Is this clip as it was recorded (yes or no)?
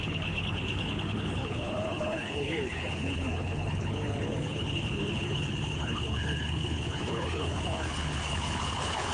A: no